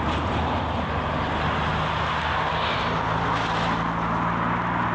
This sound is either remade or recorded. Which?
recorded